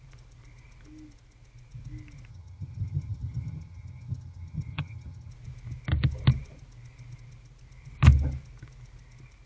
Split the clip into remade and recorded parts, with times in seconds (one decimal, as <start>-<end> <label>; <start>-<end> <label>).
0.0-2.3 recorded; 2.3-5.3 remade; 5.3-9.5 recorded